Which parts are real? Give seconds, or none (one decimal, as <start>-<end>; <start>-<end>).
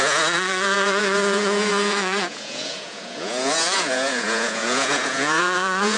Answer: none